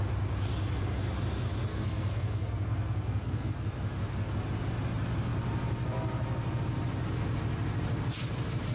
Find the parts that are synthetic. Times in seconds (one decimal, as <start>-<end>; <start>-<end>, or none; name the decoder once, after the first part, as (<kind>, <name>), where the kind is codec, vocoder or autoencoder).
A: 1.7-3.5 (codec, SNAC)